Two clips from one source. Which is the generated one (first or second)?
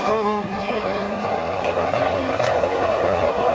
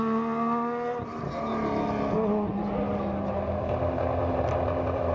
first